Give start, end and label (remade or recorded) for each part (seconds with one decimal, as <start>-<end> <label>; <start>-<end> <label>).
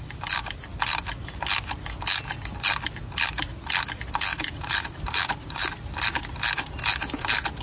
0.0-4.3 recorded; 4.3-5.7 remade; 5.7-7.6 recorded